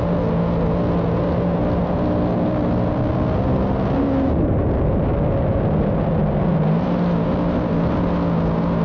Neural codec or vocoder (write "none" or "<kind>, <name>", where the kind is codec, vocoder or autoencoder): none